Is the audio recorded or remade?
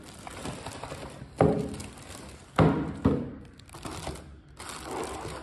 recorded